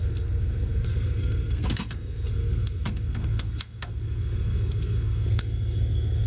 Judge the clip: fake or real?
fake